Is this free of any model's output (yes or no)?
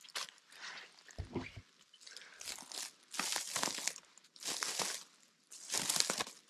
yes